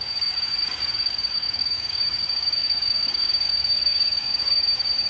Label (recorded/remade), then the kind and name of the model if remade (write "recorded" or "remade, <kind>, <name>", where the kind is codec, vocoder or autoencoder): remade, codec, DAC